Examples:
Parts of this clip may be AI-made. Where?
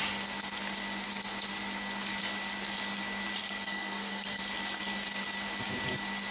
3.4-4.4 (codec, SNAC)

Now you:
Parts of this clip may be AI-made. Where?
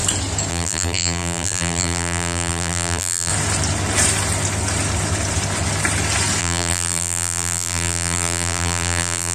0.5-3.3 (vocoder, BigVGAN v2); 6.4-9.3